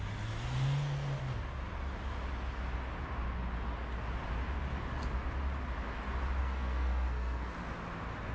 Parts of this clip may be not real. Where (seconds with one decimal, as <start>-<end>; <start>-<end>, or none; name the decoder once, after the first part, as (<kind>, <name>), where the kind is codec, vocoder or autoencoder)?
6.4-7.5 (codec, SNAC)